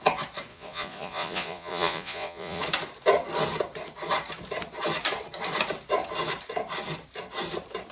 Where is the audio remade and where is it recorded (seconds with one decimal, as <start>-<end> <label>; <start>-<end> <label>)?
0.0-0.5 recorded; 0.5-2.6 remade; 2.6-7.9 recorded